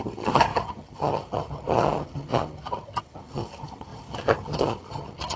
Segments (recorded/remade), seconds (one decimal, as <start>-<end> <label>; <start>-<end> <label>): 0.0-5.4 remade